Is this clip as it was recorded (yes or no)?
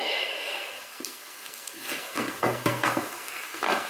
no